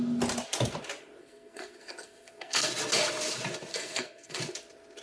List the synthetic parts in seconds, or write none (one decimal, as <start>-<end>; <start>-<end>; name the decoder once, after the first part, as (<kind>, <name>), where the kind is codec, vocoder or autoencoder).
1.2-2.7 (codec, SNAC); 3.7-4.4